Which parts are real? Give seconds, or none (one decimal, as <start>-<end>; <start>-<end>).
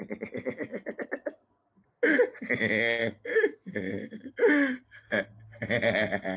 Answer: 0.0-3.0; 4.3-6.4